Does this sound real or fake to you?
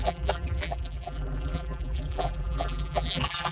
fake